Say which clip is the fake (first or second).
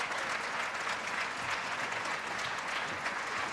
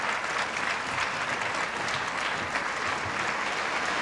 first